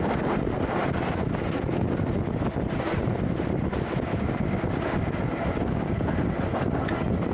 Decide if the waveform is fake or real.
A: real